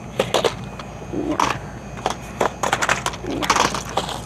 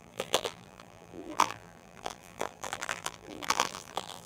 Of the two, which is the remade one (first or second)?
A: second